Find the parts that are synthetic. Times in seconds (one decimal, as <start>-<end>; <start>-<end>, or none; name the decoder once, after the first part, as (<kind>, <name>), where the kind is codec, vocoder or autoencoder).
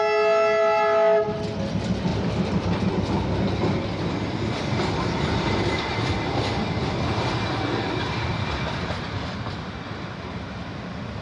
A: 2.1-2.9 (vocoder, BigVGAN v2)